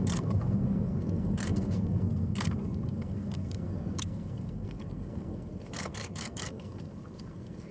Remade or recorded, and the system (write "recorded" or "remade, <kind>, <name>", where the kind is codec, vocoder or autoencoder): remade, codec, SNAC